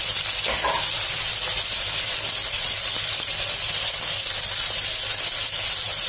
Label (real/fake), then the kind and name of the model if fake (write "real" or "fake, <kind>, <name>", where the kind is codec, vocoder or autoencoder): real